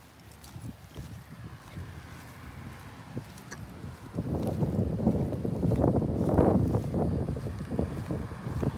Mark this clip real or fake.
real